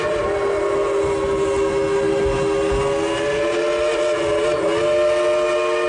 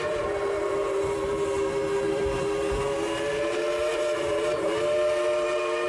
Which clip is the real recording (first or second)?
first